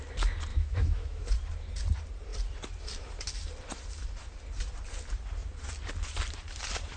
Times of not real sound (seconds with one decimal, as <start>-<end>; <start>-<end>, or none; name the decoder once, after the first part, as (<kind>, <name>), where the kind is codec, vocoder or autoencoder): 0.5-1.2 (autoencoder, DAC-VAE)